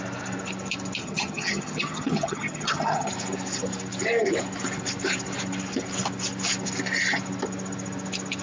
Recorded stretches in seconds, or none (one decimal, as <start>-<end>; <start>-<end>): 0.0-1.0; 3.1-8.4